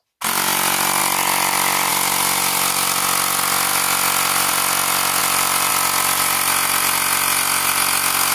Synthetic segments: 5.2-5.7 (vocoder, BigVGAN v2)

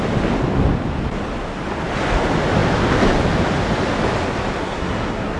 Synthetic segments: 4.6-5.4 (codec, SNAC)

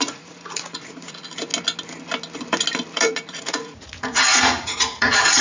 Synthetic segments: 0.0-1.5 (vocoder, Vocos); 3.0-5.4

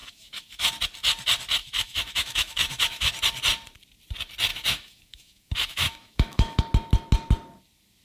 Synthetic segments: 0.0-0.7 (autoencoder, DAC-VAE); 1.6-3.1; 4.5-6.6